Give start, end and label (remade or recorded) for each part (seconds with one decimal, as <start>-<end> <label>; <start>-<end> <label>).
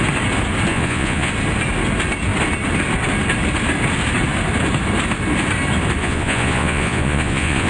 0.0-0.7 recorded; 0.7-1.3 remade; 1.3-6.0 recorded; 6.0-7.7 remade